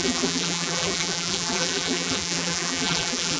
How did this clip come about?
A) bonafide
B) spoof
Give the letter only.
B